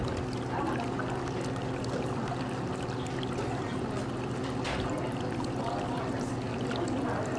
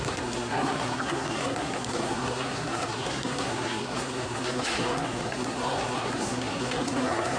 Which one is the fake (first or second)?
second